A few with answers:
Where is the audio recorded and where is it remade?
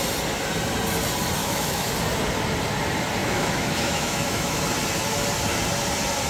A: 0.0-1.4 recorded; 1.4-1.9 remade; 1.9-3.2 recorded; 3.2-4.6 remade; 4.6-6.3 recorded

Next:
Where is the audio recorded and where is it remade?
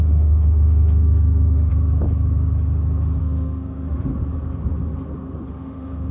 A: 0.0-1.7 remade; 1.7-3.2 recorded; 3.2-4.1 remade; 4.1-5.5 recorded; 5.5-6.1 remade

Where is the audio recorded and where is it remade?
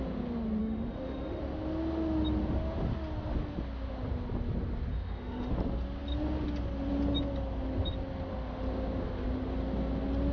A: 0.0-0.6 recorded; 0.6-1.4 remade; 1.4-4.9 recorded; 4.9-5.5 remade; 5.5-10.3 recorded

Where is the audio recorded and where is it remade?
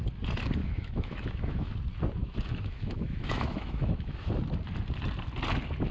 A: 0.0-0.6 recorded; 0.6-1.7 remade; 1.7-2.2 recorded; 2.2-4.3 remade; 4.3-5.9 recorded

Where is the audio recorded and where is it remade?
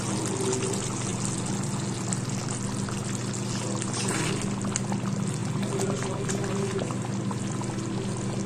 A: 0.0-8.5 recorded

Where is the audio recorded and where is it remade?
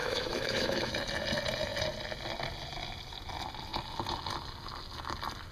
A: 0.0-0.9 remade; 0.9-5.5 recorded